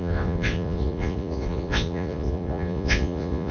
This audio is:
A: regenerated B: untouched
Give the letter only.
A